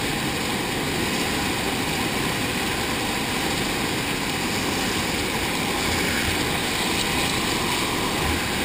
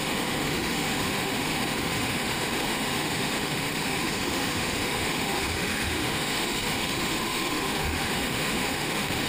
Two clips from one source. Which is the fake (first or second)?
second